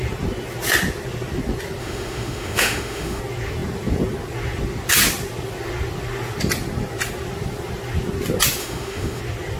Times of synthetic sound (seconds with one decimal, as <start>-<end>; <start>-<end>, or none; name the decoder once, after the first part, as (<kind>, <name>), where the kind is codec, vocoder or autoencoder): 1.8-3.2 (autoencoder, DAC-VAE); 8.6-9.2